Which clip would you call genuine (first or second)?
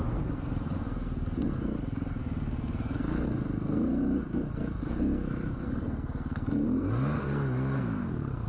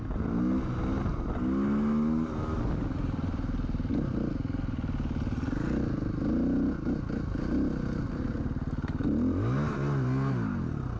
second